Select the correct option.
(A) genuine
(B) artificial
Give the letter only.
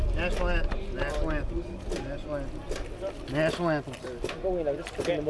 A